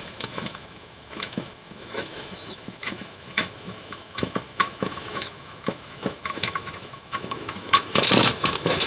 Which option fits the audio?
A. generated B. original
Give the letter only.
A